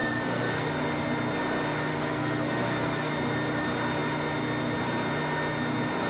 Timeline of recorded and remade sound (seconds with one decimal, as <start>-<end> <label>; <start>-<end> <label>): 0.0-0.7 remade; 0.7-1.9 recorded; 1.9-3.1 remade; 3.1-6.1 recorded